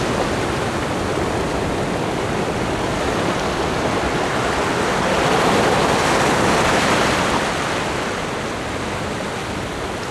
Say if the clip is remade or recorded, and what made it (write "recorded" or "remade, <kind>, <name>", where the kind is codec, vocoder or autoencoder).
recorded